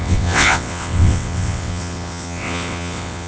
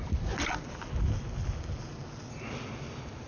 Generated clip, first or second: first